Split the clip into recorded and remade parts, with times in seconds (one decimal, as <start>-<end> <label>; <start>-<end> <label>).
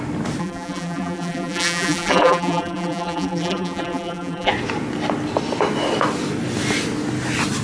0.0-0.4 recorded; 0.4-4.5 remade; 4.5-7.6 recorded